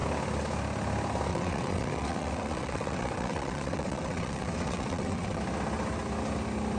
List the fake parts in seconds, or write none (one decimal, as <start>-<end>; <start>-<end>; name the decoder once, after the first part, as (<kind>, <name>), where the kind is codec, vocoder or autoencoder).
1.3-5.4 (vocoder, WaveNeXt)